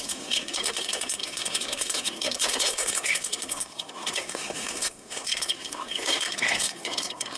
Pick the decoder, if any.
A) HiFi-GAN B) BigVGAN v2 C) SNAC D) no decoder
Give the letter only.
C